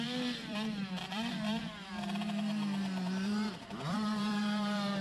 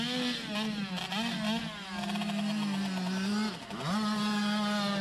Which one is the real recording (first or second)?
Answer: second